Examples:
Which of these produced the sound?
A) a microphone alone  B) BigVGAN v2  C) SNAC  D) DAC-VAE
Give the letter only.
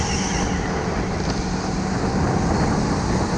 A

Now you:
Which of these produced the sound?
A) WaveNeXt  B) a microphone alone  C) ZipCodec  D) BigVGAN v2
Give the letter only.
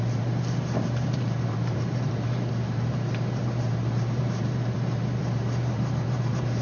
D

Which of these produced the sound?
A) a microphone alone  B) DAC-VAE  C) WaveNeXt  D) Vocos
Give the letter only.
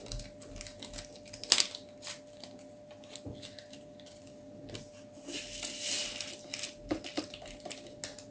A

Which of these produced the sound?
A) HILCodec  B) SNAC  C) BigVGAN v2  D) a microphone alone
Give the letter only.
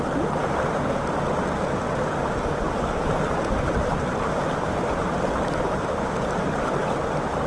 D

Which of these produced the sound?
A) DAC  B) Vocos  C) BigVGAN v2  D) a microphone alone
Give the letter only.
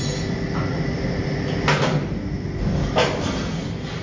D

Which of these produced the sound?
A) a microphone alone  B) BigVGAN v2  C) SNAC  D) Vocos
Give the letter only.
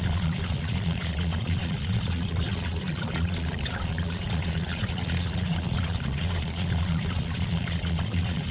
D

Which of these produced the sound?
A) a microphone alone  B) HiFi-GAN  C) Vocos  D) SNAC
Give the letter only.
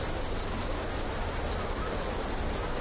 A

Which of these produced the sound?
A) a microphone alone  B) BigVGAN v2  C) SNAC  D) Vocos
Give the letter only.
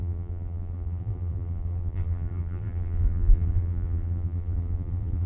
B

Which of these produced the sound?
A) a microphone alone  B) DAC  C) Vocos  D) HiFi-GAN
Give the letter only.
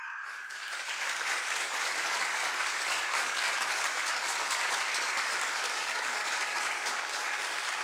B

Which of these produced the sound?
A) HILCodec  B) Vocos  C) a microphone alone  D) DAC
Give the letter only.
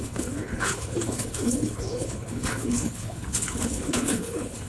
A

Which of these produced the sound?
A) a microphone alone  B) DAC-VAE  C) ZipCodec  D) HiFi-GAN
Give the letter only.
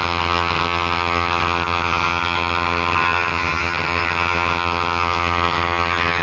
D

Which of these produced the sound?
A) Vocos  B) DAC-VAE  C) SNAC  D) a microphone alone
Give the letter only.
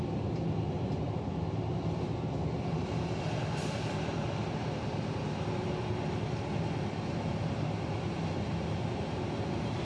D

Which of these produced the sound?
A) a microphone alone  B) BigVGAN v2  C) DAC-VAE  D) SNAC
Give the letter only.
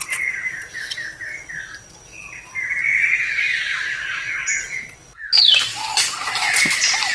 A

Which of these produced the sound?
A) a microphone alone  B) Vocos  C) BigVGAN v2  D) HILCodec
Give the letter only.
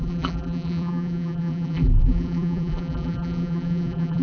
C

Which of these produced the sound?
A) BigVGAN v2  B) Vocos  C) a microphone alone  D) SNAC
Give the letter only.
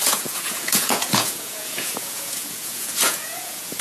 B